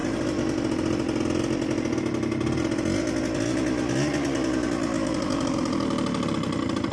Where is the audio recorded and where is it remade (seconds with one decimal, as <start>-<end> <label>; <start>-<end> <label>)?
0.0-6.9 recorded